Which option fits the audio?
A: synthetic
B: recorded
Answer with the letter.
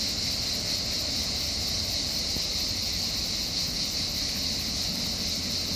B